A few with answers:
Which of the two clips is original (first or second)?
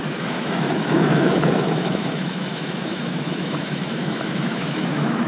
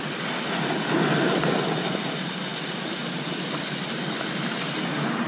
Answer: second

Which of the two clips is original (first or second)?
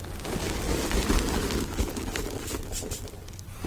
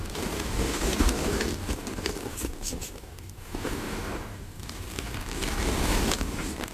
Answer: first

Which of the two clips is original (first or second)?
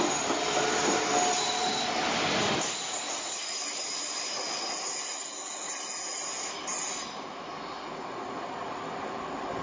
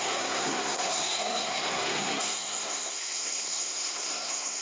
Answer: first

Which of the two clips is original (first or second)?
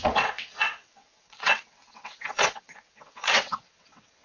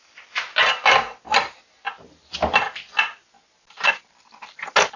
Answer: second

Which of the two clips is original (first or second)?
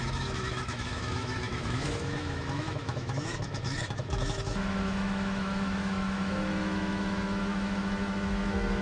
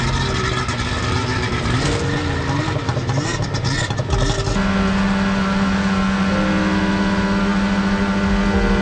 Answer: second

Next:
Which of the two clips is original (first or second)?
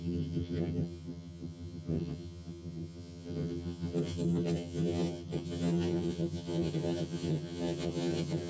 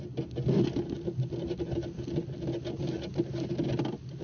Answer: second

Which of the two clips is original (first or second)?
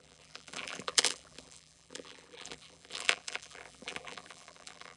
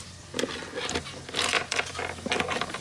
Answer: second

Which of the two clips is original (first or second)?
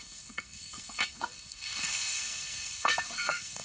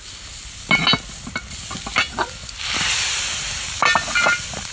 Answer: second